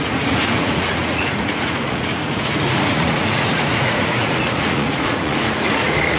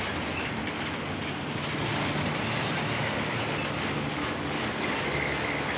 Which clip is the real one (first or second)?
second